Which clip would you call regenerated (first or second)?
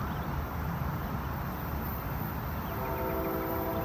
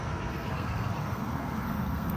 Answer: second